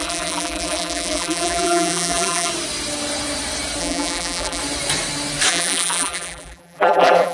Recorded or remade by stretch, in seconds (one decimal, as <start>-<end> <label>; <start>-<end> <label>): 0.0-2.5 remade; 2.5-3.8 recorded; 3.8-4.6 remade; 4.6-5.5 recorded; 5.5-7.3 remade